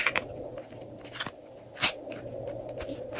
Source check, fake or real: real